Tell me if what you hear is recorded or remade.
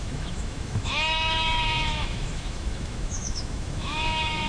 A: remade